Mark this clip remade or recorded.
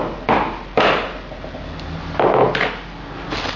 recorded